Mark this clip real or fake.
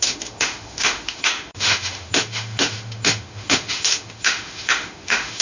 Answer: fake